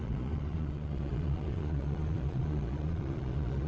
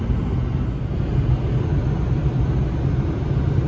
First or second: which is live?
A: second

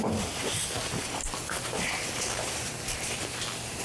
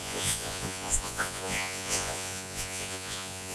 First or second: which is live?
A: first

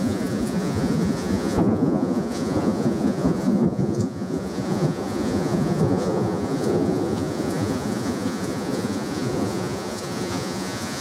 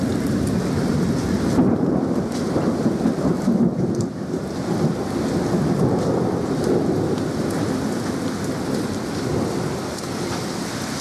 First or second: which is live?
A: second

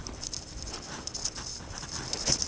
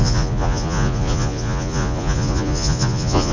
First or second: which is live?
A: first